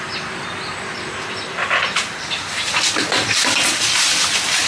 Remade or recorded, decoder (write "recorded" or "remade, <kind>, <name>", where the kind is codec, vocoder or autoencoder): remade, vocoder, BigVGAN v2